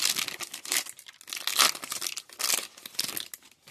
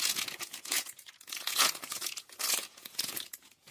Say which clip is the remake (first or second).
second